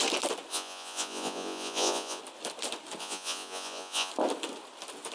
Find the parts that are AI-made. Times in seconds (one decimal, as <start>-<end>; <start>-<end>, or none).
0.5-2.2; 3.0-4.1